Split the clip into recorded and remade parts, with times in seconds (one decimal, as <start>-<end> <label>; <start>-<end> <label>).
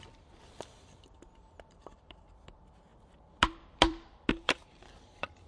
0.0-5.5 remade